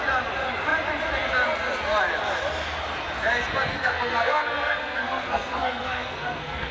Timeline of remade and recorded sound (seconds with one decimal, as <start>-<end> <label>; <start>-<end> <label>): 0.0-3.7 recorded; 3.7-6.7 remade